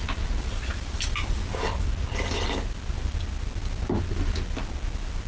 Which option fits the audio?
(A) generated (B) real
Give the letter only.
B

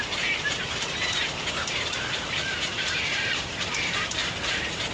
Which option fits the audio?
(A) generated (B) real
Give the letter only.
A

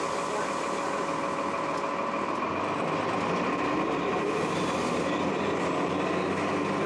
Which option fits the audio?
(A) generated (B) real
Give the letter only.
B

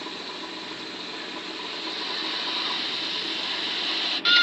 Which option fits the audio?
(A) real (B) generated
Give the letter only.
A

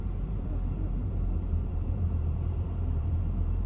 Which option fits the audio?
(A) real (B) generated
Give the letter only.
B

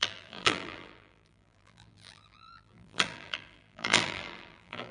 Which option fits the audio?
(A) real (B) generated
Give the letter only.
B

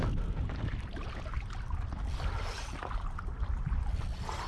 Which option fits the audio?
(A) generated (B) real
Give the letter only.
A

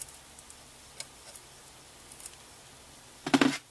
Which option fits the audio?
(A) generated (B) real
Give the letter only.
B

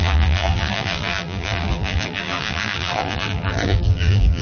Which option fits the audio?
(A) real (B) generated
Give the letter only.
B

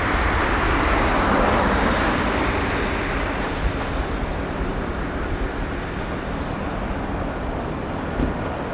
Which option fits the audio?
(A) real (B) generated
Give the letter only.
A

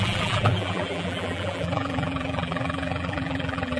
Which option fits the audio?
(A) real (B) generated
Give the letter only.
B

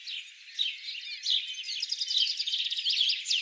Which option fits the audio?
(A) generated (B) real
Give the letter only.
B